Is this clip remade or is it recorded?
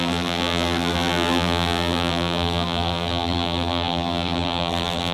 remade